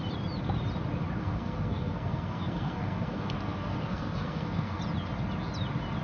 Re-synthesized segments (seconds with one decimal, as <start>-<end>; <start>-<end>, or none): 1.2-4.8